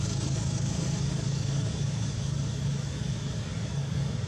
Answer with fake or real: fake